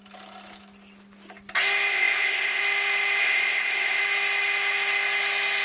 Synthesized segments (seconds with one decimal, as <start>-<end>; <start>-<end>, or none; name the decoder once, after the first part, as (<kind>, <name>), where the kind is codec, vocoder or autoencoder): 1.9-2.6 (codec, ZipCodec); 3.2-4.0